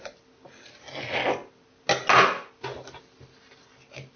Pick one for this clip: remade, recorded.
recorded